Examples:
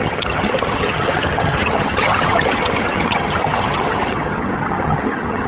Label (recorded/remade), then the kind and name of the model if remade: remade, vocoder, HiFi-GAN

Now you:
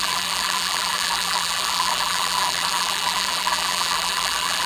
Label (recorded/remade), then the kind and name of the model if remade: remade, vocoder, BigVGAN v2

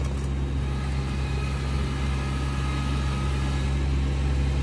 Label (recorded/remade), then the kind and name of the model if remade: recorded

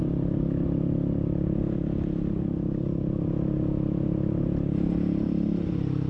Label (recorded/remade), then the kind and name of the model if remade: recorded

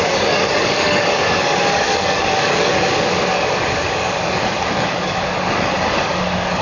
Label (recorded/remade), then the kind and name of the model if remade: remade, codec, DAC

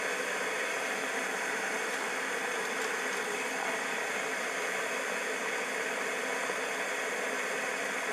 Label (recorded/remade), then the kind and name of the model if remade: recorded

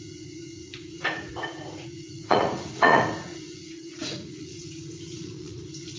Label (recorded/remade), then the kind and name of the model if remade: remade, vocoder, Vocos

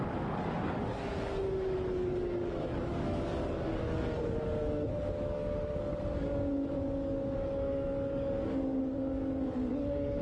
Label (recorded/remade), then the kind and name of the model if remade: remade, codec, DAC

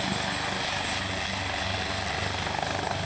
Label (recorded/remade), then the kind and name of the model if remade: recorded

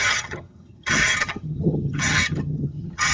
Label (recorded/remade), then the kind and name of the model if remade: remade, vocoder, HiFi-GAN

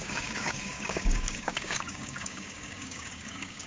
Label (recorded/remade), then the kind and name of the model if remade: remade, codec, DAC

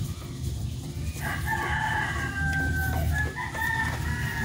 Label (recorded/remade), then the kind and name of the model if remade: recorded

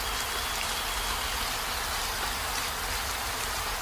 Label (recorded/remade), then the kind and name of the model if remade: recorded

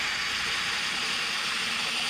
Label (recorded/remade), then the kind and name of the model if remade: recorded